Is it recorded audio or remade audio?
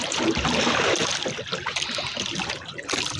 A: recorded